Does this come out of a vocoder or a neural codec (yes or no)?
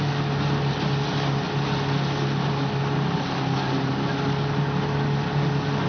no